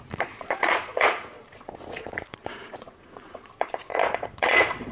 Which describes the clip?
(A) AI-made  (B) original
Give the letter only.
A